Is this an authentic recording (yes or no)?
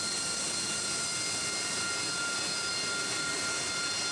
yes